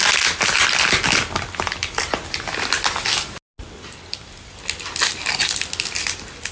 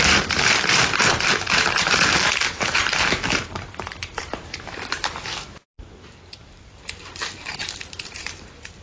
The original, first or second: first